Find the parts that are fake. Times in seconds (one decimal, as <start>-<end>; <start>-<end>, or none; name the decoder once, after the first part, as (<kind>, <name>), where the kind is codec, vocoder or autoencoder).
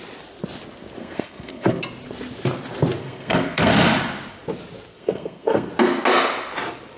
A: 1.0-1.8 (codec, SNAC); 3.0-3.7; 4.9-5.7